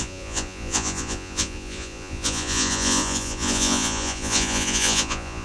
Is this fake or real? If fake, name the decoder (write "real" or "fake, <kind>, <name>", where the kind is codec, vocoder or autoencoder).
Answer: fake, vocoder, Vocos